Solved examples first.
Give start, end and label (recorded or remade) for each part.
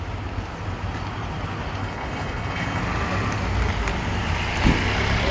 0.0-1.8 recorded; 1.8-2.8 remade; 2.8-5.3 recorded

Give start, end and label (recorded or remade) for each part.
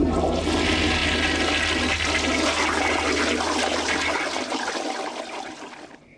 0.0-6.2 recorded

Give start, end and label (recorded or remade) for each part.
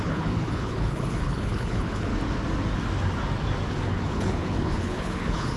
0.0-2.1 remade; 2.1-3.7 recorded; 3.7-5.6 remade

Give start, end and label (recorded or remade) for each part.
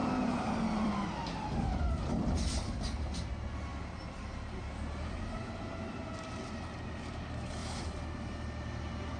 0.0-2.7 remade; 2.7-3.7 recorded; 3.7-4.7 remade; 4.7-7.6 recorded; 7.6-9.2 remade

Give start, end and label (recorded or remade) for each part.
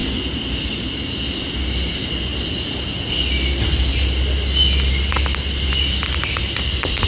0.0-7.1 recorded